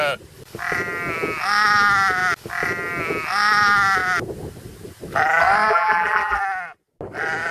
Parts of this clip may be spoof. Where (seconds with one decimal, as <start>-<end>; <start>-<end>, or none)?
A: 5.7-6.4